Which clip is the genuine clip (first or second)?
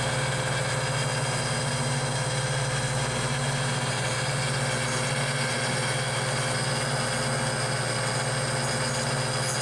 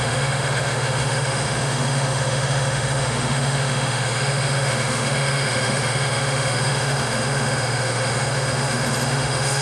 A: first